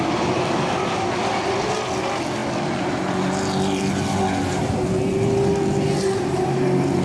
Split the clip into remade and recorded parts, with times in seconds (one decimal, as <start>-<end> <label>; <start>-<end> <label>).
0.0-7.0 recorded